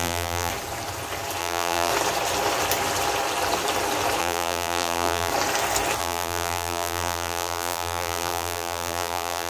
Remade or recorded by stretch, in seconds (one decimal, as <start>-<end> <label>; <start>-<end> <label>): 0.0-0.5 remade; 0.5-1.4 recorded; 1.4-1.9 remade; 1.9-4.2 recorded; 4.2-5.3 remade; 5.3-6.0 recorded; 6.0-9.5 remade